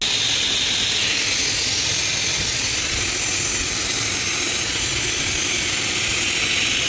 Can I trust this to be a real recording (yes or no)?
yes